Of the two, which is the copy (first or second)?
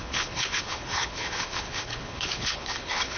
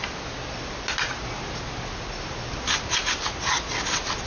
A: first